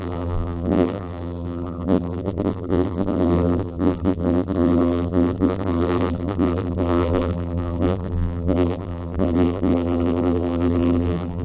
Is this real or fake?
fake